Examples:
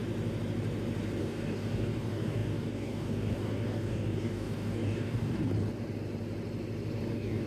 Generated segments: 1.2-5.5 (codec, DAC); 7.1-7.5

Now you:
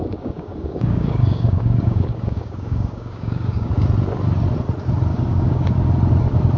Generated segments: 0.0-3.7 (codec, DAC); 5.1-5.6

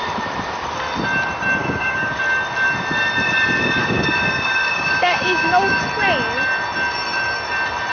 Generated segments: 1.6-2.2 (codec, DAC); 3.8-5.8

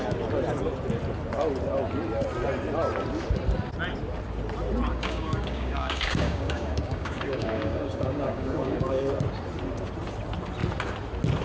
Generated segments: 4.9-9.1 (codec, DAC)

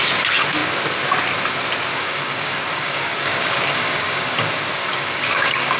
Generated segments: 1.9-5.8 (codec, DAC)

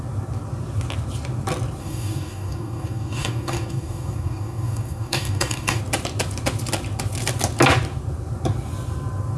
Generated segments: 1.8-5.8 (codec, DAC)

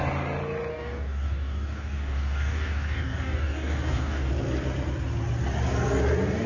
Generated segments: 0.7-4.3 (codec, DAC)